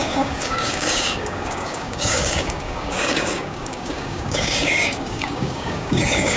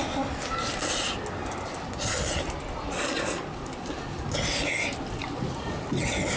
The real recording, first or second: second